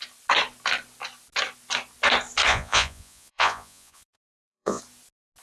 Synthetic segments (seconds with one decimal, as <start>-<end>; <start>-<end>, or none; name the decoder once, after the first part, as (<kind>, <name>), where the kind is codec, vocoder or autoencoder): 2.5-4.8 (vocoder, Vocos)